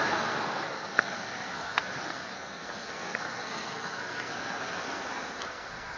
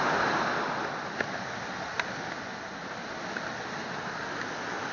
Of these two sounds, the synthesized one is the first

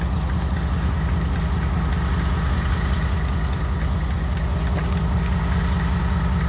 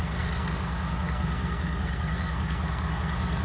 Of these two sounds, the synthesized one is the second